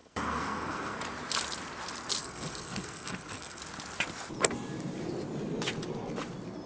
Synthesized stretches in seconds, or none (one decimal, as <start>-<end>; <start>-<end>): 0.0-1.0; 2.2-3.6